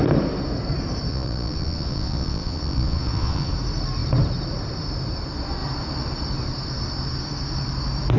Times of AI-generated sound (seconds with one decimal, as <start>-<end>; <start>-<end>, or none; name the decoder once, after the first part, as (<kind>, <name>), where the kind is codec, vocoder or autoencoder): 1.1-3.5 (vocoder, Vocos)